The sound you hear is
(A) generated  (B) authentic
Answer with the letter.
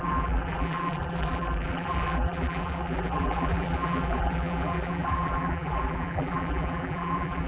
A